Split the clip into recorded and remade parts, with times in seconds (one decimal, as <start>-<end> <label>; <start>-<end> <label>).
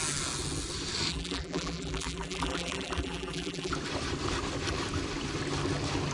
0.0-1.1 recorded; 1.1-3.7 remade; 3.7-6.1 recorded